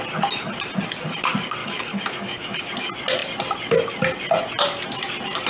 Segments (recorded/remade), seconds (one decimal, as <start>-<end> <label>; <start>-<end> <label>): 0.0-1.6 recorded; 1.6-2.6 remade; 2.6-5.5 recorded

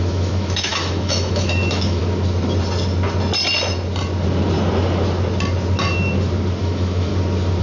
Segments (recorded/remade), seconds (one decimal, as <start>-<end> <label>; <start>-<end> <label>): 0.0-2.0 remade; 2.0-6.6 recorded; 6.6-7.1 remade; 7.1-7.6 recorded

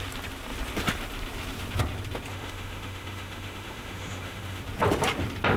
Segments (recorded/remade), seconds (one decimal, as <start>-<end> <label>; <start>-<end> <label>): 0.0-2.3 recorded; 2.3-4.6 remade; 4.6-5.6 recorded

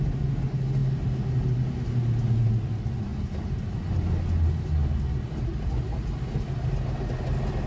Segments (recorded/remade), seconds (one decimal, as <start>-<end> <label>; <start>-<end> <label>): 0.0-7.7 recorded

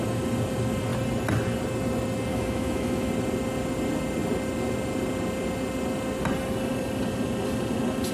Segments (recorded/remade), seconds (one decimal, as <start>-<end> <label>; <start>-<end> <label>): 0.0-2.3 recorded; 2.3-3.1 remade; 3.1-8.1 recorded

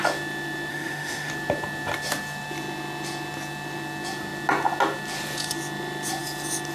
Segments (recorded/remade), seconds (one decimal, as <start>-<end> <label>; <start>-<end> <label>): 0.0-0.7 recorded; 0.7-1.3 remade; 1.3-6.7 recorded

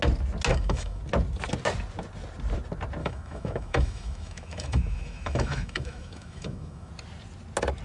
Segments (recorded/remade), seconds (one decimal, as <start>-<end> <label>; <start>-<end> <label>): 0.0-0.5 recorded; 0.5-1.0 remade; 1.0-3.0 recorded; 3.0-6.9 remade; 6.9-7.8 recorded